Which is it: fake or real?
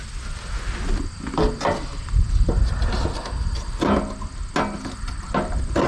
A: real